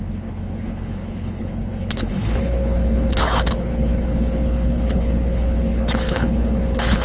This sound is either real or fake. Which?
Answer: fake